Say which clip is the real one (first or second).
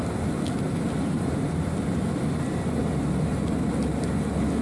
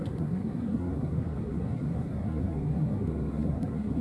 first